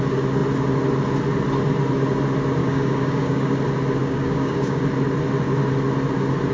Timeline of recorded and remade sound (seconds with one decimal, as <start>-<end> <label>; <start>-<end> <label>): 0.0-2.6 recorded; 2.6-3.6 remade; 3.6-4.0 recorded; 4.0-4.8 remade; 4.8-6.5 recorded

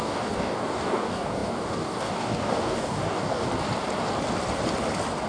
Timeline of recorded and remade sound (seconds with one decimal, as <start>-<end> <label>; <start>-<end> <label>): 0.0-3.5 remade; 3.5-5.3 recorded

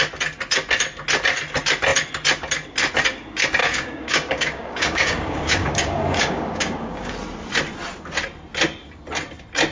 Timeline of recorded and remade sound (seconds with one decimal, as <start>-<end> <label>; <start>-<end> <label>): 0.0-3.6 recorded; 3.6-7.1 remade; 7.1-9.7 recorded

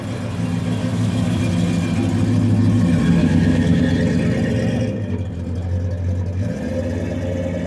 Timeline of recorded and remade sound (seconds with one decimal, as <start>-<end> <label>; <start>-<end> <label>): 0.0-0.8 recorded; 0.8-1.4 remade; 1.4-3.2 recorded; 3.2-3.8 remade; 3.8-7.7 recorded

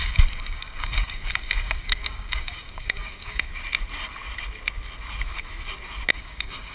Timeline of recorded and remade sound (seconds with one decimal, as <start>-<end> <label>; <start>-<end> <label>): 0.0-3.5 remade; 3.5-6.1 recorded; 6.1-6.7 remade

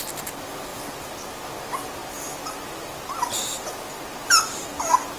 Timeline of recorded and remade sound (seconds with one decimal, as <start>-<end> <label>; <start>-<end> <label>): 0.0-5.2 recorded

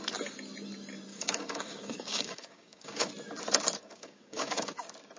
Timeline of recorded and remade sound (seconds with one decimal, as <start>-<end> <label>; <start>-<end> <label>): 0.0-1.1 recorded; 1.1-3.1 remade; 3.1-3.8 recorded; 3.8-4.8 remade; 4.8-5.2 recorded